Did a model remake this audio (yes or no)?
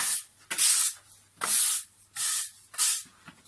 no